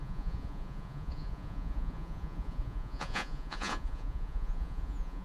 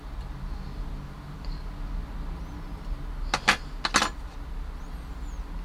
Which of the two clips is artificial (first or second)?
first